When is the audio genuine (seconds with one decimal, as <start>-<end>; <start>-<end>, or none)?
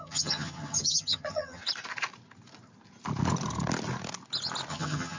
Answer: 1.6-4.7